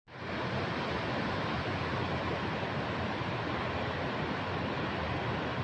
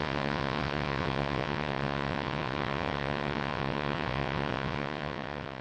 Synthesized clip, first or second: second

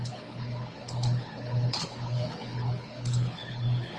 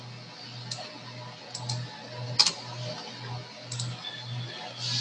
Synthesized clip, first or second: first